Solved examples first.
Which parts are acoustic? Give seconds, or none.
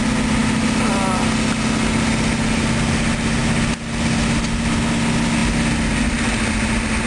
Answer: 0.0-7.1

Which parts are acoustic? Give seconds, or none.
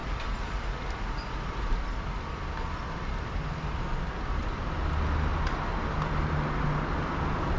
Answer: 3.4-5.3; 6.3-7.6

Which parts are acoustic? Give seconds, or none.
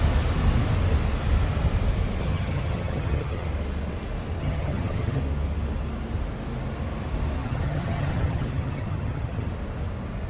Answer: 0.0-2.2; 3.5-4.4; 5.2-7.4; 9.5-10.3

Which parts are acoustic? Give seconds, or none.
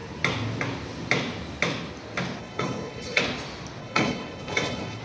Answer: 0.0-2.4; 3.2-3.8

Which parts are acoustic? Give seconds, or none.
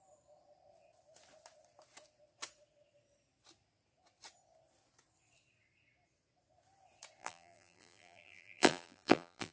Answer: 0.0-7.2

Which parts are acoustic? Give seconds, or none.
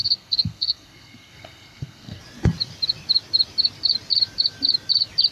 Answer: 2.2-5.3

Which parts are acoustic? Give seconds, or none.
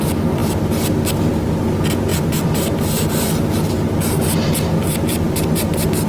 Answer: 0.0-6.1